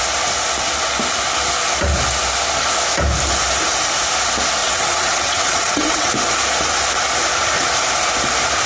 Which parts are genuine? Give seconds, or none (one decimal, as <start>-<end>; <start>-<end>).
0.0-4.6; 6.1-8.7